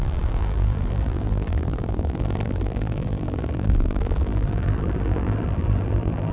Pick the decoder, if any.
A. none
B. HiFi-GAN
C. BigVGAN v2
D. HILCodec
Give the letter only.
C